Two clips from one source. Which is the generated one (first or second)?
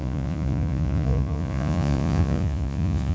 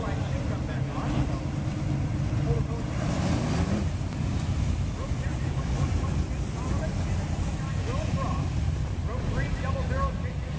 first